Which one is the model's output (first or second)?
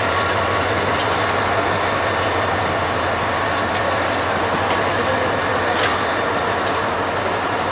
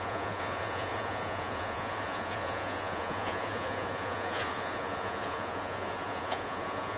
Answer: second